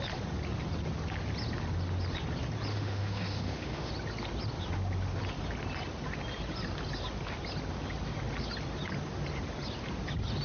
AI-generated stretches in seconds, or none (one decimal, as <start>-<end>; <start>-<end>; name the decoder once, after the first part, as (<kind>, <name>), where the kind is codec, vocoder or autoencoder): 2.7-3.9 (autoencoder, DAC-VAE)